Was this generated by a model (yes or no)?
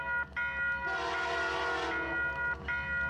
no